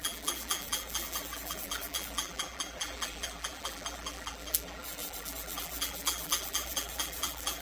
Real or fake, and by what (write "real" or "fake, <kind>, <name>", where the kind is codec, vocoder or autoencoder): fake, vocoder, BigVGAN v2